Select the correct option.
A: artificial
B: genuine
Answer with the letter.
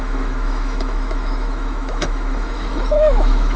A